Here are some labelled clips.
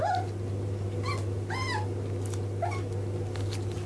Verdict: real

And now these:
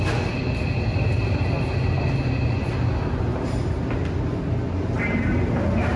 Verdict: real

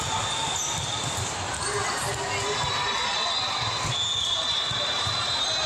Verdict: real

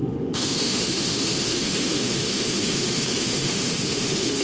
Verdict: fake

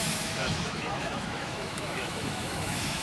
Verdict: fake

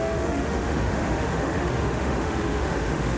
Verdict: fake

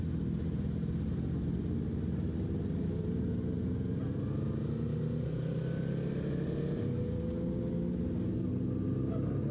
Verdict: real